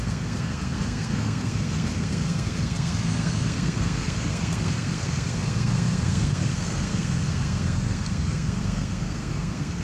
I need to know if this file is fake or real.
fake